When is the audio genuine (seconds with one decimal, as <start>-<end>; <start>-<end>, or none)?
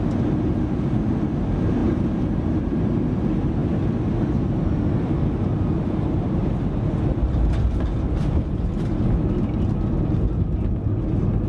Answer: 0.0-1.8; 2.6-11.5